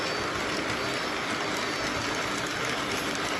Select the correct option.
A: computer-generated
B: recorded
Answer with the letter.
B